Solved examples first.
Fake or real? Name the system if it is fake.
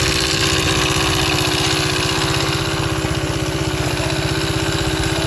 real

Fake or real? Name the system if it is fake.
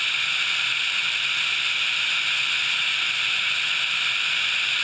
real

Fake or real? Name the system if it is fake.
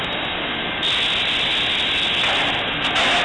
real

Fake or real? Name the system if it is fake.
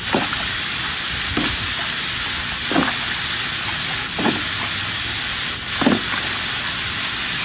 real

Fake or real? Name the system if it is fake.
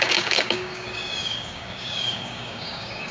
fake, codec, DAC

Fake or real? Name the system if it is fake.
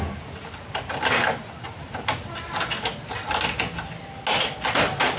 real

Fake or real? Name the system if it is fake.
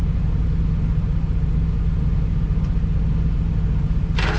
real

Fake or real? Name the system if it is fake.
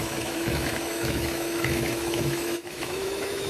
fake, autoencoder, DAC-VAE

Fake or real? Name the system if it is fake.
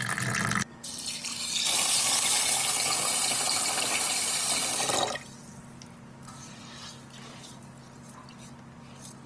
real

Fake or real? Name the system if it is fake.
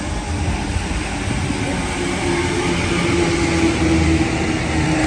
real